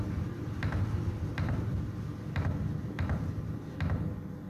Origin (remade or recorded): recorded